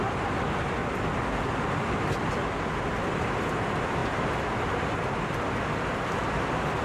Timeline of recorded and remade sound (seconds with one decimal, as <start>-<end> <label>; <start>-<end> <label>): 0.0-0.8 remade; 0.8-3.1 recorded; 3.1-4.0 remade; 4.0-6.2 recorded; 6.2-6.8 remade